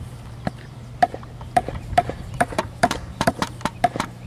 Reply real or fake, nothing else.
fake